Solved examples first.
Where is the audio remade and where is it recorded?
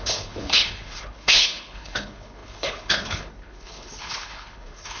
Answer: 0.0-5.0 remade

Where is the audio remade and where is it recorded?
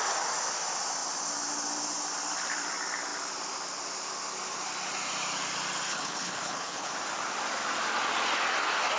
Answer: 0.0-5.9 recorded; 5.9-6.9 remade; 6.9-9.0 recorded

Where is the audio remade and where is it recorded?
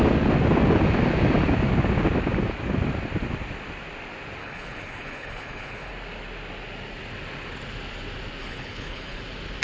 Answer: 0.0-4.4 recorded; 4.4-5.9 remade; 5.9-8.4 recorded; 8.4-9.2 remade; 9.2-9.6 recorded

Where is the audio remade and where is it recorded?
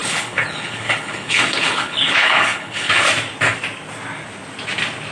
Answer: 0.0-3.1 remade; 3.1-5.1 recorded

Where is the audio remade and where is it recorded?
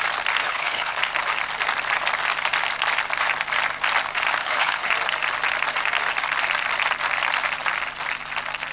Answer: 0.0-0.4 recorded; 0.4-1.0 remade; 1.0-4.4 recorded; 4.4-4.9 remade; 4.9-8.7 recorded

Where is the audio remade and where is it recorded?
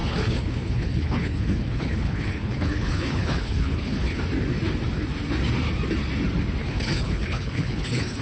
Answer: 0.0-4.2 remade; 4.2-6.6 recorded; 6.6-8.2 remade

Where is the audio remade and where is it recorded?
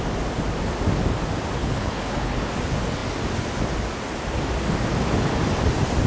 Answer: 0.0-1.6 recorded; 1.6-2.5 remade; 2.5-6.1 recorded